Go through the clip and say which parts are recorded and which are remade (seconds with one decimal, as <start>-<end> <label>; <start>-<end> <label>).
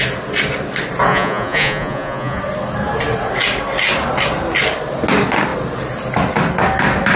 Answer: 0.0-1.1 recorded; 1.1-2.4 remade; 2.4-7.2 recorded